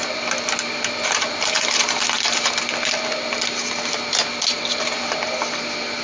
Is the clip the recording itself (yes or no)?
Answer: yes